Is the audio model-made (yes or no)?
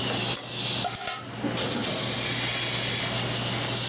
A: no